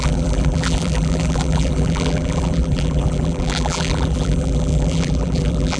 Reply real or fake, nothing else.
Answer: fake